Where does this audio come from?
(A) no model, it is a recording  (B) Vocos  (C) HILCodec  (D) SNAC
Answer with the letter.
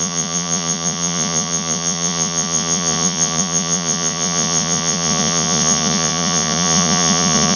B